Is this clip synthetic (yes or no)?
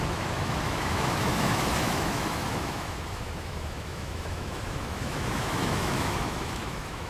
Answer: yes